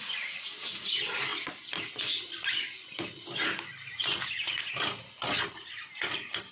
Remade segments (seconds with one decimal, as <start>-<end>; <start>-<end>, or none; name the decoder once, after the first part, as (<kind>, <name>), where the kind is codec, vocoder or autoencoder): none

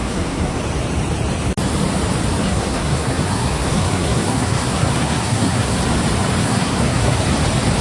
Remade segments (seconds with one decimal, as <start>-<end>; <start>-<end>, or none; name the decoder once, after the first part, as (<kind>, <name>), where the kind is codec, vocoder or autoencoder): 0.0-0.6 (codec, SNAC); 2.4-5.8; 6.4-7.2